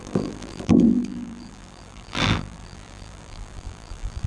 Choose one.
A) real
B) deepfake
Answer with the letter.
B